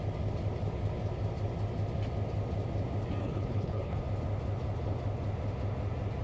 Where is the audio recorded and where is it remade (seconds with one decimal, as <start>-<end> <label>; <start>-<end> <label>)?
0.0-3.2 recorded; 3.2-4.0 remade; 4.0-6.2 recorded